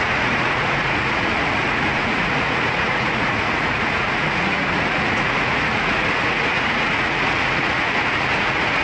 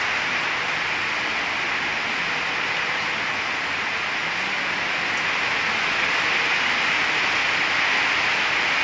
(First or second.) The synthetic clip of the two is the first